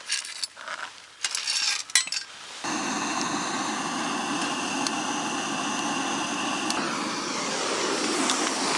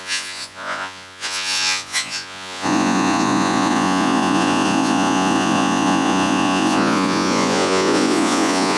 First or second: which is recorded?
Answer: first